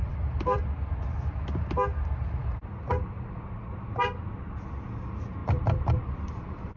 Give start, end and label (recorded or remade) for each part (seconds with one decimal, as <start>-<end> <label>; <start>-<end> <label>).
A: 0.0-0.6 remade; 0.6-2.4 recorded; 2.4-3.4 remade; 3.4-5.4 recorded; 5.4-6.8 remade